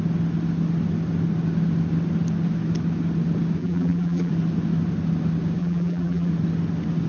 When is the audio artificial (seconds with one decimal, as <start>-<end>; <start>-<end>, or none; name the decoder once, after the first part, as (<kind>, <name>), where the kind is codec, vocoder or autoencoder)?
3.6-4.3 (vocoder, BigVGAN v2); 5.6-6.3